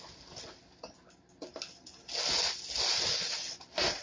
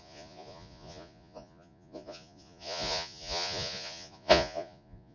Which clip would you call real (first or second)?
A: first